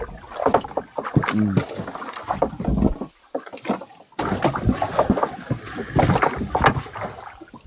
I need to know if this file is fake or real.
real